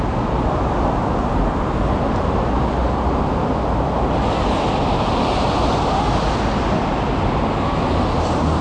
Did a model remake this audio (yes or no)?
no